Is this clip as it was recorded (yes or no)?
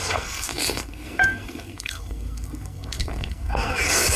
no